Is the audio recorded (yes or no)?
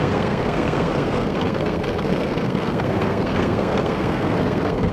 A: no